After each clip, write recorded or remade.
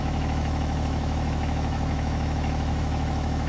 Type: remade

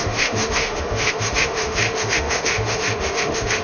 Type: remade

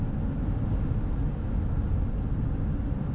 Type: recorded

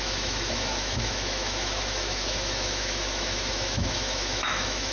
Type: remade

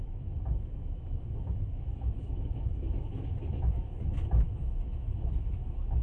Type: remade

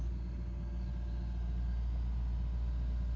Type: recorded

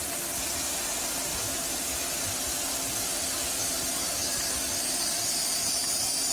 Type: recorded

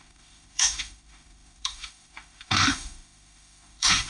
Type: remade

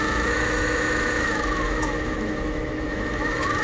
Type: remade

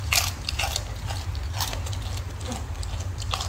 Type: recorded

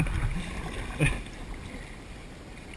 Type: recorded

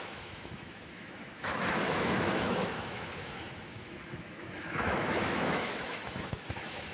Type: remade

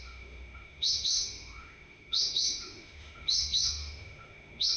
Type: remade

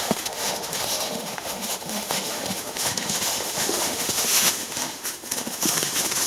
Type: remade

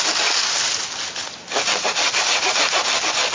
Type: recorded